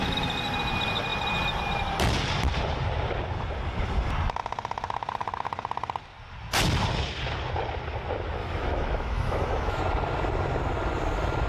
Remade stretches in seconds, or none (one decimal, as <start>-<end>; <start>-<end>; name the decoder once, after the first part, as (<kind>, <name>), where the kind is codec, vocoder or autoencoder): 8.4-9.8 (autoencoder, DAC-VAE)